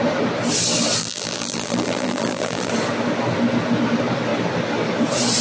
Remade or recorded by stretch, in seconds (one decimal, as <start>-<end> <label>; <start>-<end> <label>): 0.0-1.0 recorded; 1.0-2.7 remade; 2.7-5.4 recorded